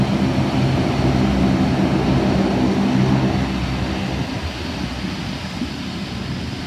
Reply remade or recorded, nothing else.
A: recorded